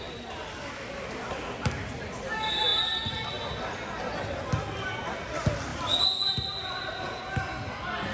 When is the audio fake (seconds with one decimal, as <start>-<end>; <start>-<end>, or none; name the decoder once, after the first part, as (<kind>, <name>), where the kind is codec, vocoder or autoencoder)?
none